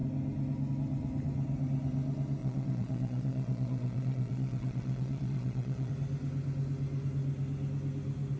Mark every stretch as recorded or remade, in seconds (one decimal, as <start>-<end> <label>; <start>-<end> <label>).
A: 0.0-2.4 recorded; 2.4-5.9 remade; 5.9-8.4 recorded